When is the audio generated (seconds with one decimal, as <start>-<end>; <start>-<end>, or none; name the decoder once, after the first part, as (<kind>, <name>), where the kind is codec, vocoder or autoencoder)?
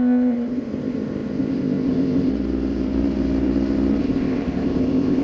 0.0-2.3 (codec, ZipCodec); 4.0-5.2